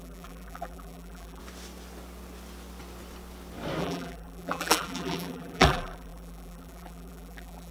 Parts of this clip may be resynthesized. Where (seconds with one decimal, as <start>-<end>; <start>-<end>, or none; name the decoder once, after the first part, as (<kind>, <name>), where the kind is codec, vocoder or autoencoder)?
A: 0.0-1.4 (vocoder, BigVGAN v2); 3.8-7.7